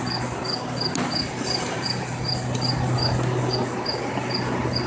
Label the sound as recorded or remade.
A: remade